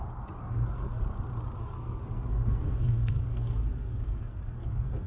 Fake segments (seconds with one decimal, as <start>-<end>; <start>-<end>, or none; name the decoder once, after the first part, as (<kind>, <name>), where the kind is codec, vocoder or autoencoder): 0.4-1.0 (codec, SNAC); 1.6-5.1